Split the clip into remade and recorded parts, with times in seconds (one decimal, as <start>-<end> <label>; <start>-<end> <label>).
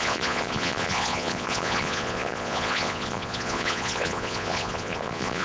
0.0-5.4 remade